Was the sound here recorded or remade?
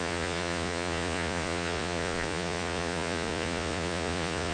remade